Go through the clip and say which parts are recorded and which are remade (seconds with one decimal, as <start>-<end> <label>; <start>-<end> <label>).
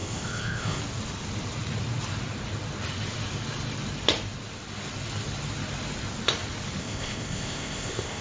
0.0-0.8 remade; 0.8-6.8 recorded; 6.8-8.2 remade